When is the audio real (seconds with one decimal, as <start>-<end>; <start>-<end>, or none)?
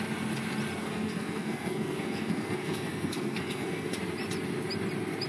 0.0-0.8; 4.0-5.3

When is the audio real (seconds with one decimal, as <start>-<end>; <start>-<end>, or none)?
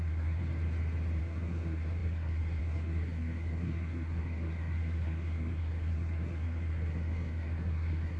0.4-1.2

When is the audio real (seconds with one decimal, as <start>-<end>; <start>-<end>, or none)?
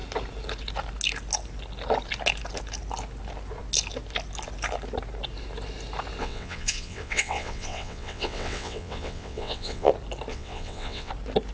0.0-6.2; 9.9-10.3; 11.1-11.5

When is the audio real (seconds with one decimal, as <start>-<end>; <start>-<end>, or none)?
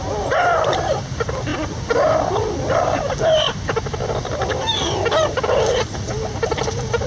none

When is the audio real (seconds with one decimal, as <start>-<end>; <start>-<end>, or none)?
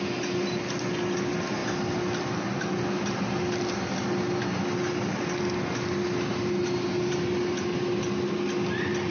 0.0-9.1